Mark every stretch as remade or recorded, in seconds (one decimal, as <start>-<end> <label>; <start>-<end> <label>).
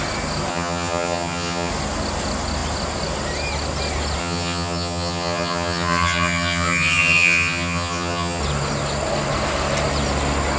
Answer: 0.0-0.5 recorded; 0.5-1.7 remade; 1.7-4.2 recorded; 4.2-8.4 remade; 8.4-10.6 recorded